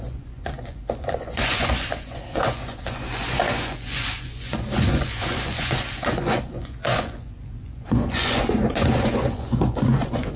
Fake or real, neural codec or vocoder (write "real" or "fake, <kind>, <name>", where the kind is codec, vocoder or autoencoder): fake, vocoder, Vocos